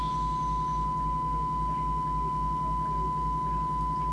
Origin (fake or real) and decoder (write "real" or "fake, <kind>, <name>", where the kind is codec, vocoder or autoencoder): real